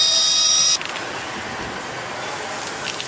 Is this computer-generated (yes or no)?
no